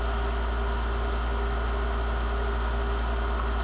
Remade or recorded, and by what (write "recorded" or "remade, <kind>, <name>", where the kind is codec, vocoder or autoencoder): recorded